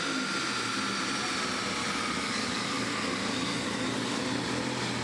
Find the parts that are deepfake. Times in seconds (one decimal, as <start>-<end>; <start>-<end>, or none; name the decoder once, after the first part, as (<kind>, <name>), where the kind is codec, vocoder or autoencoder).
1.8-4.2 (codec, DAC)